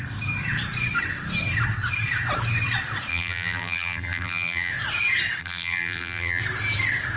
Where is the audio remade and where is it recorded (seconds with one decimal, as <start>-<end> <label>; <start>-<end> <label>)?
0.0-3.1 recorded; 3.1-4.7 remade; 4.7-5.4 recorded; 5.4-6.4 remade; 6.4-7.2 recorded